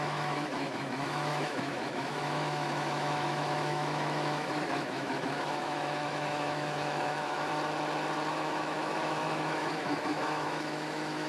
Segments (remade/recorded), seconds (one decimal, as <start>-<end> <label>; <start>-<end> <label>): 0.0-7.5 remade; 7.5-8.3 recorded; 8.3-11.3 remade